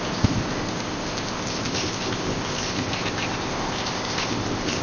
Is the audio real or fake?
fake